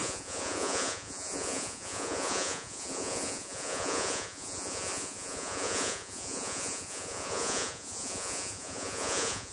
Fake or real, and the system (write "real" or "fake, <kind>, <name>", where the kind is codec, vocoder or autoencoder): fake, vocoder, Vocos